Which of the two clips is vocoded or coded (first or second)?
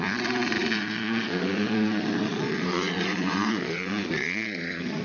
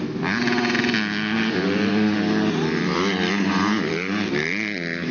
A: first